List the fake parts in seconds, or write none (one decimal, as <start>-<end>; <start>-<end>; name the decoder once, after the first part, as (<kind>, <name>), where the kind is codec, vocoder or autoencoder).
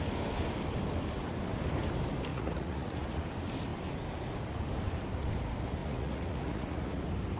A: 2.3-3.2 (vocoder, Vocos); 5.8-7.0